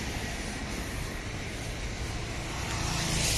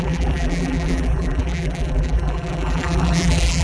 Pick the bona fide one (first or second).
first